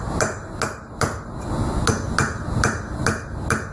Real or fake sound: real